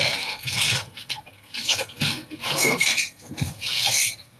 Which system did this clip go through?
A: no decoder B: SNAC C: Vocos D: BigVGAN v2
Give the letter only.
B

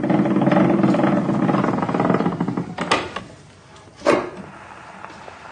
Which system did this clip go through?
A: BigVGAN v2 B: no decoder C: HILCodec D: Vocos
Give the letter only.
B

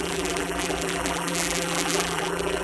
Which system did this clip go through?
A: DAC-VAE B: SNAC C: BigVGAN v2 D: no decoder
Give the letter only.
C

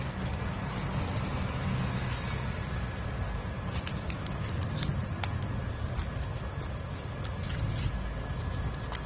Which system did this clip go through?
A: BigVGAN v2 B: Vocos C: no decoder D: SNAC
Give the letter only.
C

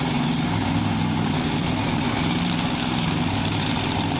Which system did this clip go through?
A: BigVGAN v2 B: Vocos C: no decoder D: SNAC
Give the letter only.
A